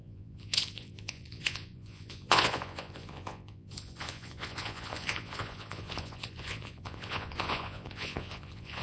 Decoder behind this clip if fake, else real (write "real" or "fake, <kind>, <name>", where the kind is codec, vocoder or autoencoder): fake, vocoder, Vocos